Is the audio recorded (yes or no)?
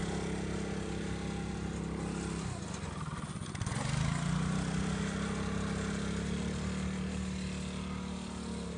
yes